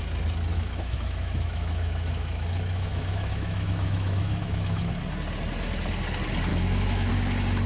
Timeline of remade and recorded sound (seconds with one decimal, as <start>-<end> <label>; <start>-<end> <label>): 0.0-0.5 recorded; 0.5-4.9 remade; 4.9-6.5 recorded; 6.5-7.1 remade; 7.1-7.7 recorded